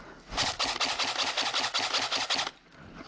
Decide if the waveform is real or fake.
real